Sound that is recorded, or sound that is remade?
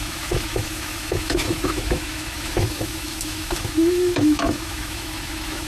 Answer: remade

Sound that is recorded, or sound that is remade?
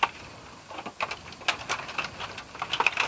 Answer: recorded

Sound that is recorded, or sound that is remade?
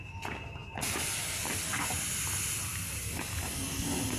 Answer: recorded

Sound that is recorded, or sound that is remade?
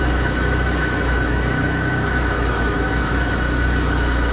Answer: remade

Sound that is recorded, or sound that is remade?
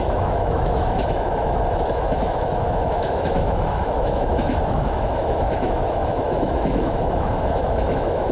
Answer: remade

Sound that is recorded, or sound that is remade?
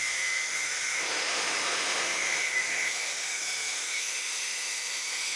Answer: remade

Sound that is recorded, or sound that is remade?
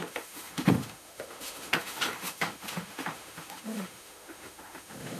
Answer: remade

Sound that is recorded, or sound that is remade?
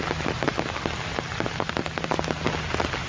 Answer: recorded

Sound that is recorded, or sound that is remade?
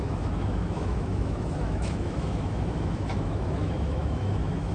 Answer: remade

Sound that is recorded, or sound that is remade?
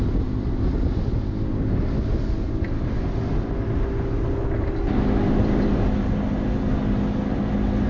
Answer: recorded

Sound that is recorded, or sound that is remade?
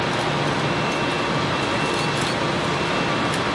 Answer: recorded